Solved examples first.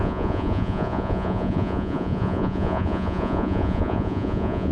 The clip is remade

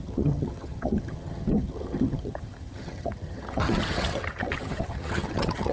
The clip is remade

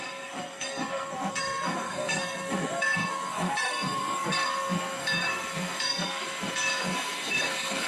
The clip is remade